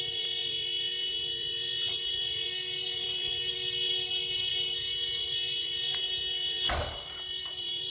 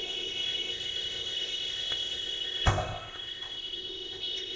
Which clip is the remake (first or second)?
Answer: second